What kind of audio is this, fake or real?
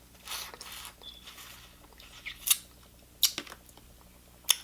real